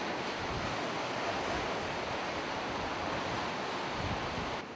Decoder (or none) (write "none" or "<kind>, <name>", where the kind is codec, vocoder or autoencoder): none